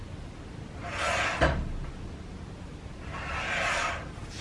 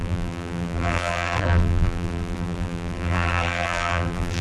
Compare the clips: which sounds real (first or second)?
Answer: first